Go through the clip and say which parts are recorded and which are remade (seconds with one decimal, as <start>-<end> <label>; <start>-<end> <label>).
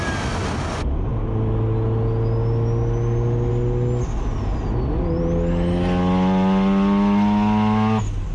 0.0-8.3 recorded